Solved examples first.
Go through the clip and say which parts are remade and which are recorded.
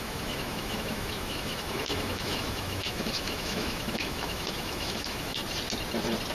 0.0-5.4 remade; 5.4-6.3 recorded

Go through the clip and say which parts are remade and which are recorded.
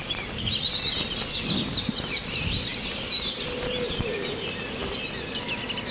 0.0-2.7 remade; 2.7-3.6 recorded; 3.6-5.9 remade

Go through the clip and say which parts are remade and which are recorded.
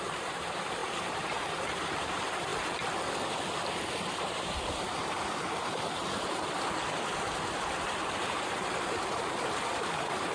0.0-2.5 remade; 2.5-4.2 recorded; 4.2-6.0 remade; 6.0-7.7 recorded; 7.7-10.3 remade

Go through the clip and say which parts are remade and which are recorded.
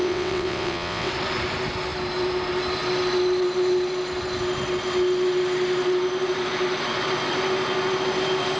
0.0-1.1 remade; 1.1-8.6 recorded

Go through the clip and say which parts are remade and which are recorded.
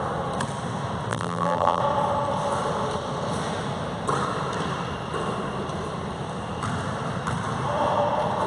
0.0-1.1 recorded; 1.1-1.8 remade; 1.8-8.5 recorded